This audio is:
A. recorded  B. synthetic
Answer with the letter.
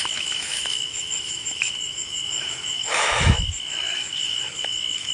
B